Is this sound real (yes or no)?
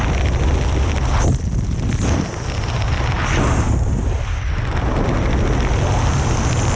yes